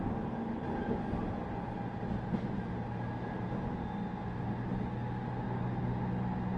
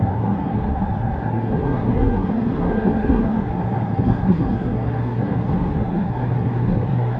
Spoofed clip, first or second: second